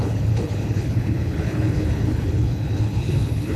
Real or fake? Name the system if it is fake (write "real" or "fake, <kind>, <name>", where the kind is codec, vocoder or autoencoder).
fake, codec, HILCodec